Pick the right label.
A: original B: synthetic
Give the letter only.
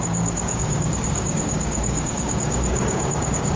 B